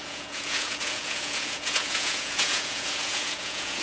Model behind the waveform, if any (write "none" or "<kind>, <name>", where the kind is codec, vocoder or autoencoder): vocoder, Vocos